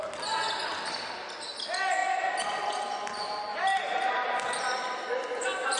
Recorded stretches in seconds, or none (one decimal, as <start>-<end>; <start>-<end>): 0.0-3.5; 5.1-5.8